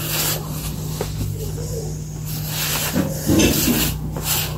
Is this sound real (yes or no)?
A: yes